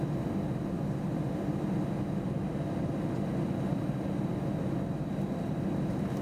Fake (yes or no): no